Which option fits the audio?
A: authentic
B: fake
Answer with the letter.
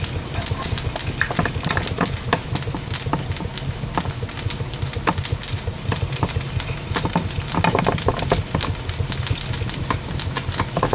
A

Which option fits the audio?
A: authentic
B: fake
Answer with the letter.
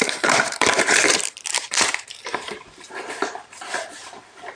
B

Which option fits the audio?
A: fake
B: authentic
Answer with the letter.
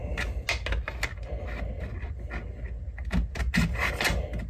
B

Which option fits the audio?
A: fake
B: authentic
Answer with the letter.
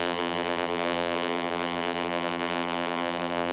A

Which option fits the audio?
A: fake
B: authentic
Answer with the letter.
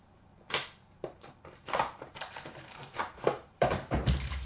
A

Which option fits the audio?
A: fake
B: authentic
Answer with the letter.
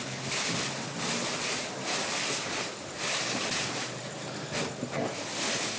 B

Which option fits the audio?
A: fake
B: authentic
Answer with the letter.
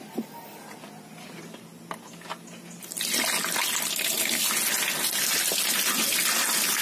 B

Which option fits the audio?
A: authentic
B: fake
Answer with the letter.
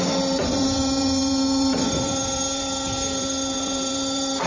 B